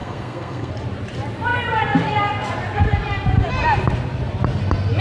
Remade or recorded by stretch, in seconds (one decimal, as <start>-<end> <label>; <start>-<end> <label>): 0.0-0.7 remade; 0.7-5.0 recorded